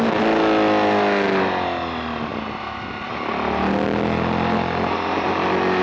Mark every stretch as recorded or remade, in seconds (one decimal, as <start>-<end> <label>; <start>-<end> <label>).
0.0-5.8 recorded